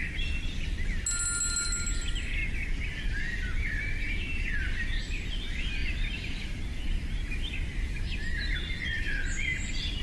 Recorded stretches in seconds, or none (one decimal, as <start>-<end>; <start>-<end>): 0.0-2.4; 5.0-5.8; 6.9-10.0